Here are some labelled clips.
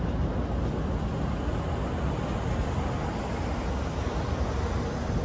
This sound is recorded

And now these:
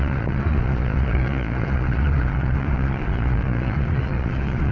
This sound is remade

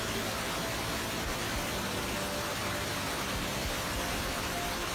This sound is recorded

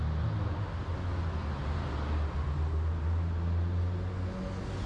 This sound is recorded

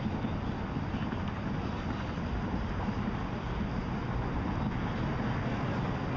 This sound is recorded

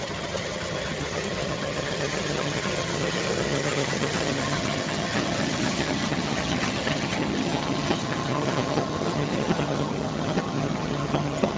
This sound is remade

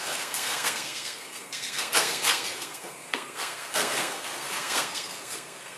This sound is remade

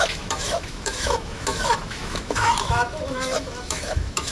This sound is remade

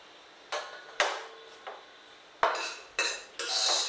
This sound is recorded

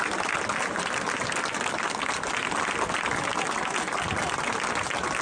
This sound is recorded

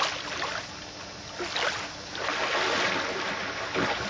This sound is recorded